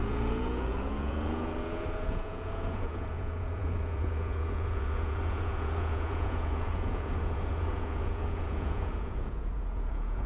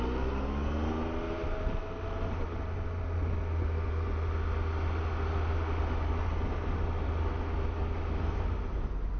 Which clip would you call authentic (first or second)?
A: second